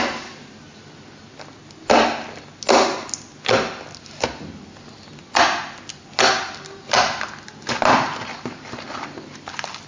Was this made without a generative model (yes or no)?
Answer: yes